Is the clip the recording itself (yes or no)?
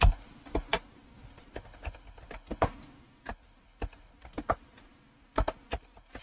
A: yes